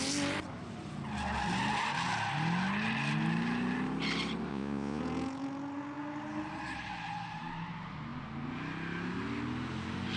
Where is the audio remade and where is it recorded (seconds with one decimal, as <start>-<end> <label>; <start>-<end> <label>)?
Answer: 0.0-4.5 recorded; 4.5-5.0 remade; 5.0-10.2 recorded